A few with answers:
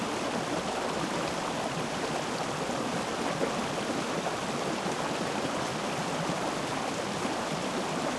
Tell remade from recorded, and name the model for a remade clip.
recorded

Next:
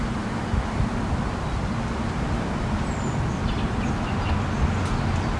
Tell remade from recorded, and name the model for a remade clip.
recorded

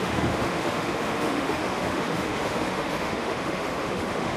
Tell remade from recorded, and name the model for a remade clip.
remade, autoencoder, DAC-VAE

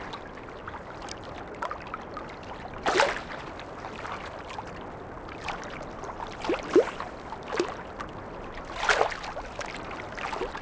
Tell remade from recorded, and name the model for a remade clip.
recorded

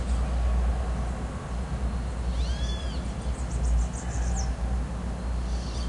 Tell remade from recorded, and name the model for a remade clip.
recorded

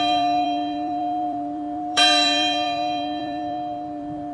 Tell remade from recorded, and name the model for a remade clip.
remade, vocoder, BigVGAN v2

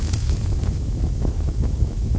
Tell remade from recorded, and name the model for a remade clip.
remade, autoencoder, DAC-VAE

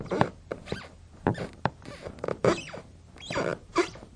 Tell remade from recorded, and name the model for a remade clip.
remade, vocoder, BigVGAN v2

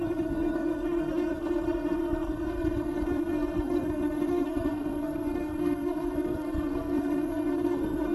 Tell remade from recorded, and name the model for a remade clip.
remade, codec, SNAC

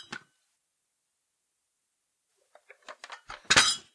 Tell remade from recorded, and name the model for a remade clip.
recorded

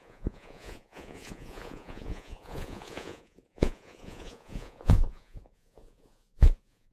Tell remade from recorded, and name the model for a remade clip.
remade, vocoder, Vocos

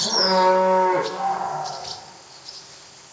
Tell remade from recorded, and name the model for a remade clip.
recorded